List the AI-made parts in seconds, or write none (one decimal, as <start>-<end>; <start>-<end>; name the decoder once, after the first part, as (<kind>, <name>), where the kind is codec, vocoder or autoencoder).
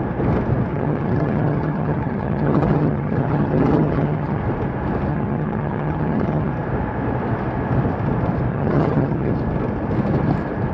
0.7-4.4 (vocoder, HiFi-GAN); 5.1-6.5; 8.5-9.3